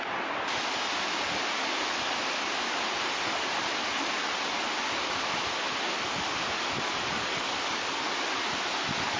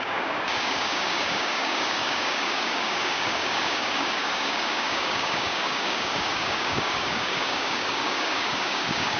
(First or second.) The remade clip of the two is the second